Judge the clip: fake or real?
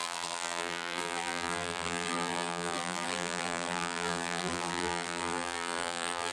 fake